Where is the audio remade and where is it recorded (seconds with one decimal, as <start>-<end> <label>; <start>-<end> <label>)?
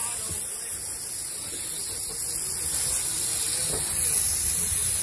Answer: 0.0-5.0 recorded